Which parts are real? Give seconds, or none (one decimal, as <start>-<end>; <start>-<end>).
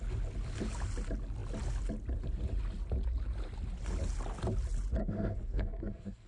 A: 0.0-5.0